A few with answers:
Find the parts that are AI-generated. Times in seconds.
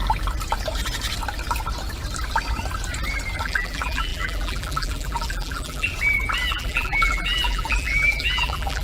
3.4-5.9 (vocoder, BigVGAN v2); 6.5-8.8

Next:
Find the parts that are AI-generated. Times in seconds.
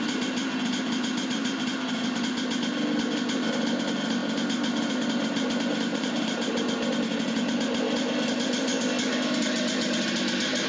5.9-6.6 (vocoder, BigVGAN v2)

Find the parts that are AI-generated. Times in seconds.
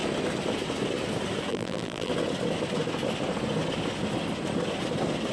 1.5-2.1 (vocoder, BigVGAN v2)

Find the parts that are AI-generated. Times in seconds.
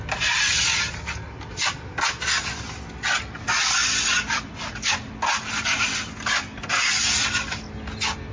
none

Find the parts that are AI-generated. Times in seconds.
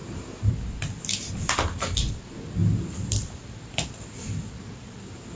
0.0-0.5 (vocoder, BigVGAN v2); 2.6-5.4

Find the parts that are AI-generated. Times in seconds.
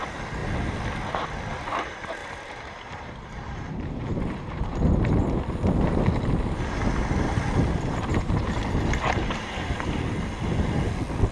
2.2-4.8 (vocoder, BigVGAN v2); 8.1-8.6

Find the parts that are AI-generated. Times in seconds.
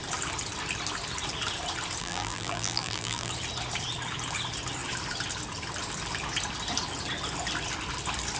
2.0-3.3 (vocoder, BigVGAN v2)